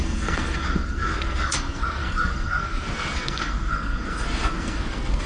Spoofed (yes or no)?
yes